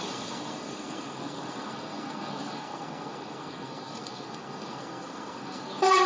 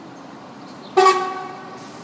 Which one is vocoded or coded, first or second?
first